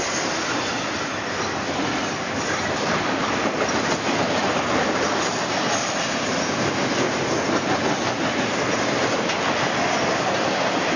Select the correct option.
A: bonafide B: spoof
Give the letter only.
A